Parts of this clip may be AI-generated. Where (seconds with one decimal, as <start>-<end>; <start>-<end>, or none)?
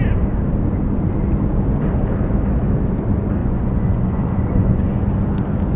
3.4-5.0